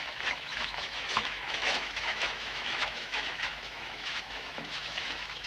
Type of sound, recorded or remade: remade